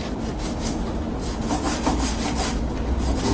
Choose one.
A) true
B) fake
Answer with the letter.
A